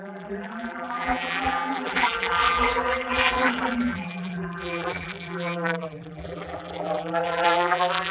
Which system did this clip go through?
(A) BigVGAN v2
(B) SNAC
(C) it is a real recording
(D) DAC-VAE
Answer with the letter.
A